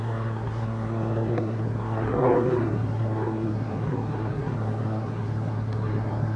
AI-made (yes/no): yes